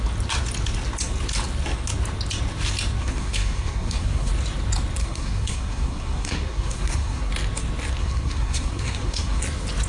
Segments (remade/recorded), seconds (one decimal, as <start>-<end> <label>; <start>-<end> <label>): 0.0-3.0 recorded; 3.0-4.3 remade; 4.3-5.0 recorded; 5.0-7.3 remade; 7.3-8.0 recorded; 8.0-9.4 remade; 9.4-9.9 recorded